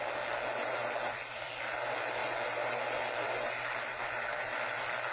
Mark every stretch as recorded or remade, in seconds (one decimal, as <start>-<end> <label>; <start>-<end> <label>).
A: 0.0-5.1 recorded